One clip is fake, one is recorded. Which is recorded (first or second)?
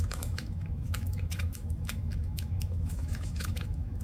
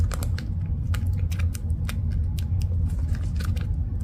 second